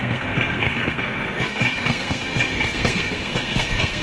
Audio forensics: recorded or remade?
remade